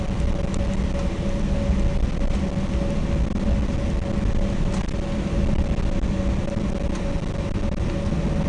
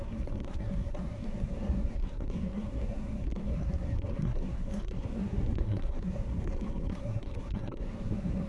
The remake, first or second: second